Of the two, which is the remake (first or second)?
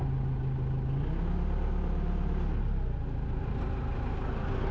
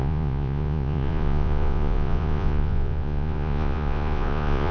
second